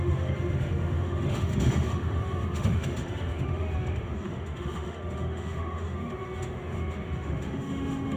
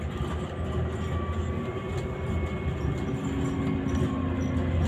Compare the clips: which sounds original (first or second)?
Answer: second